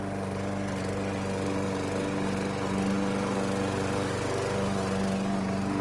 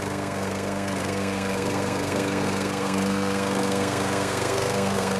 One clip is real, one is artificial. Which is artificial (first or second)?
second